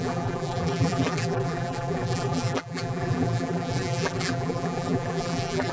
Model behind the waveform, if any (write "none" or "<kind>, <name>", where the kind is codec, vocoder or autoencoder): vocoder, BigVGAN v2